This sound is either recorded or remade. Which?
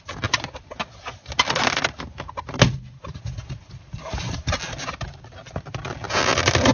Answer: recorded